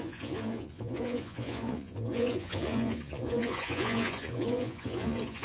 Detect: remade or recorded remade